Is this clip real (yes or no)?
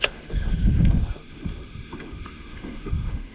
no